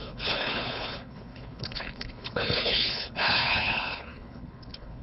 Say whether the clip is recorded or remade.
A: remade